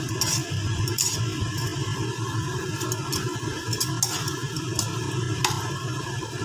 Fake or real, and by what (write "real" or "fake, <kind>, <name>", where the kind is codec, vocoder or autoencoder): real